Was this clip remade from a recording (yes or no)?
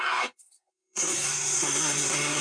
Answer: yes